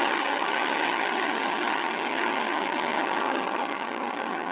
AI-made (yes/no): yes